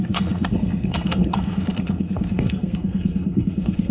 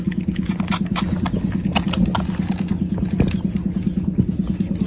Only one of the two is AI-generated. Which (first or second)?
first